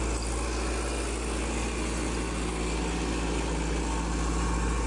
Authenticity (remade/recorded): recorded